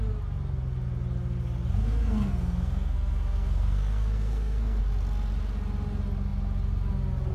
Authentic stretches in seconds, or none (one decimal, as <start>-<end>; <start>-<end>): 0.0-1.8; 4.8-7.3